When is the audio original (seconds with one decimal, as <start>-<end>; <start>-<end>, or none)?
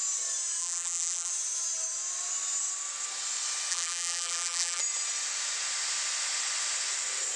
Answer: 0.0-0.6; 1.3-3.7; 4.8-7.4